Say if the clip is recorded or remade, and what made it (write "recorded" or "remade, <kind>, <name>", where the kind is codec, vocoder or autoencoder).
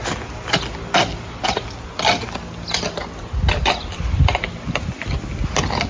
recorded